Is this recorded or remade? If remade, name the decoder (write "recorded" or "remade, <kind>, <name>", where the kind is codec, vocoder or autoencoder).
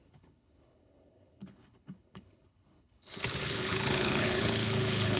remade, codec, HILCodec